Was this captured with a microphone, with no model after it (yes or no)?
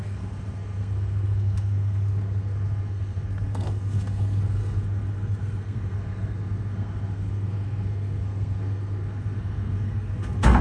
no